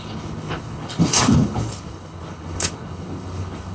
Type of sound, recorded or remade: remade